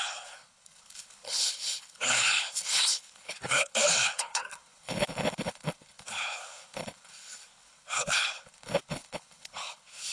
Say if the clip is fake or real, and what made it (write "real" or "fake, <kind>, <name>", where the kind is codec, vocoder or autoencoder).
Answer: fake, codec, HILCodec